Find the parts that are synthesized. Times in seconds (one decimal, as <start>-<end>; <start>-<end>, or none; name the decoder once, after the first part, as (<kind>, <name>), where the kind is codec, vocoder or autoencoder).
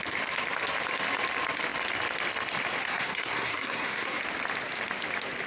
2.8-4.2 (codec, SNAC)